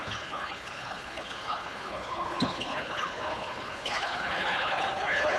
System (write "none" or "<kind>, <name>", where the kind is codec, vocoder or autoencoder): codec, HILCodec